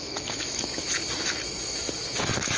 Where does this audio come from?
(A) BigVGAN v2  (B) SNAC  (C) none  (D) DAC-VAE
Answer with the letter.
D